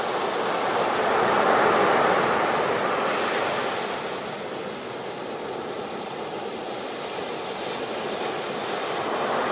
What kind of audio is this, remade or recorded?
recorded